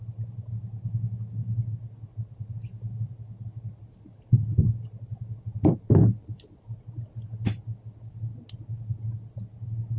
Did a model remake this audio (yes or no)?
no